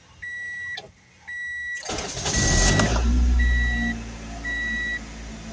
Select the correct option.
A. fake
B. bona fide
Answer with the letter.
B